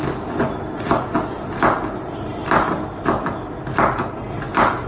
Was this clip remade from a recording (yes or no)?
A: no